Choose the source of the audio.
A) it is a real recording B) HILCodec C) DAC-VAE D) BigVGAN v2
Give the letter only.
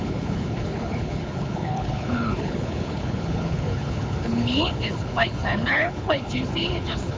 B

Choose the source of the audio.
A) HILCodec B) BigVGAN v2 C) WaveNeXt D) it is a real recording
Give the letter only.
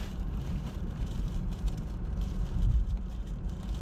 B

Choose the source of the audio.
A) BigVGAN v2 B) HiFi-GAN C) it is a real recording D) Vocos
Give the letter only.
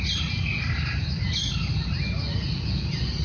C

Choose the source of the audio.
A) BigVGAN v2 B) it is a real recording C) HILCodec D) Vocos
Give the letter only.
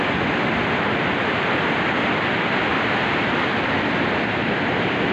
B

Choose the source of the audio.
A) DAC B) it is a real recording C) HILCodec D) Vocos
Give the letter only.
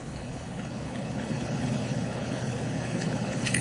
C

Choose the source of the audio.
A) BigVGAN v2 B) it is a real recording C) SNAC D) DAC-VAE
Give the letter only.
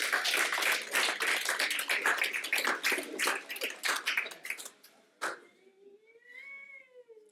B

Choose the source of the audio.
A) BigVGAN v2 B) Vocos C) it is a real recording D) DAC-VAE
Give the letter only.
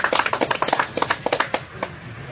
C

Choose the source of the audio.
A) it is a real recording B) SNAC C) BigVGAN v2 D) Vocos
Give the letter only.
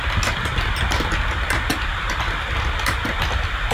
A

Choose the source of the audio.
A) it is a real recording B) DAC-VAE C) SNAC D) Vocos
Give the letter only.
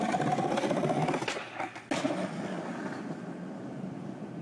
A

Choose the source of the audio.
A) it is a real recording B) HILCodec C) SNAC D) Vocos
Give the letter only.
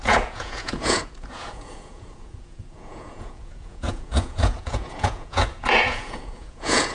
D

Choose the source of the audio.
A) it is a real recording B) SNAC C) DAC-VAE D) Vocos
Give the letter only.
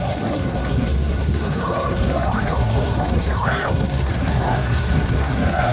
B